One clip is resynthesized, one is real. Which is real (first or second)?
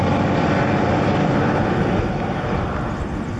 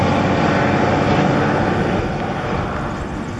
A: second